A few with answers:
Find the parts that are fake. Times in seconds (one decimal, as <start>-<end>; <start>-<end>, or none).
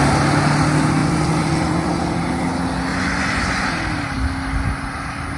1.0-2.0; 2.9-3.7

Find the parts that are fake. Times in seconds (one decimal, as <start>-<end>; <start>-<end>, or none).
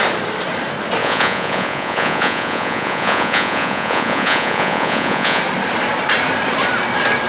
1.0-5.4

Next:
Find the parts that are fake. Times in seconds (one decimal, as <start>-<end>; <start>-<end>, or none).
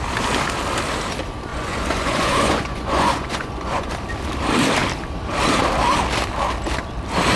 1.5-3.9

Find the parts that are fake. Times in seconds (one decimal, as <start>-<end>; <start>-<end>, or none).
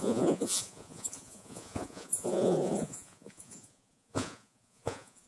0.0-5.3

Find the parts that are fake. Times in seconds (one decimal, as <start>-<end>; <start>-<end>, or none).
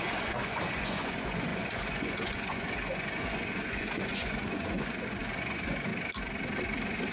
0.0-5.9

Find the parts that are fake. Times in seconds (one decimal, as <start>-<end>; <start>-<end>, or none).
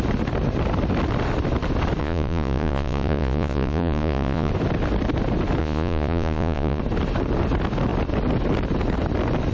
2.0-4.5; 5.6-6.8